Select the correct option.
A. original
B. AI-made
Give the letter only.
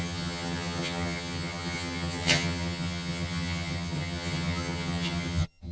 B